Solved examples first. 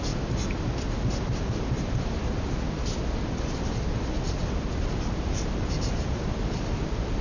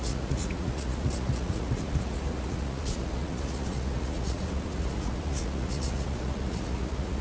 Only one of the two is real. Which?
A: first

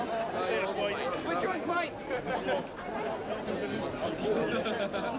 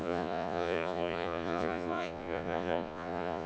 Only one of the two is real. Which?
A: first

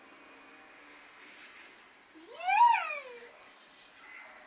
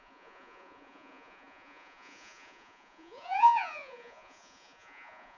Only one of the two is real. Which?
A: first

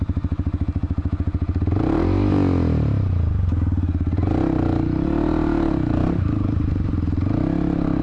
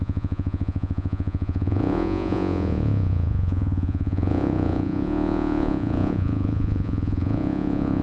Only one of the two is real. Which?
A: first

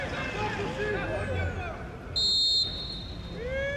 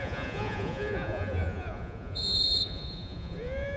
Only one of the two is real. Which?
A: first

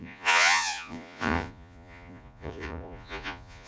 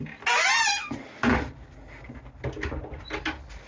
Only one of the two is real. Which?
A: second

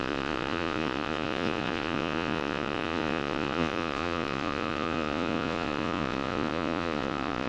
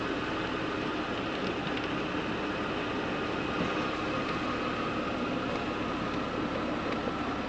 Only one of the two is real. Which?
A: second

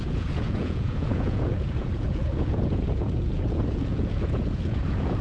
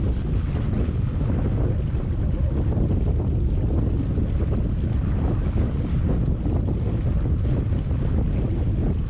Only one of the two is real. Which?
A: second